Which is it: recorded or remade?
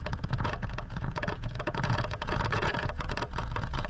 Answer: remade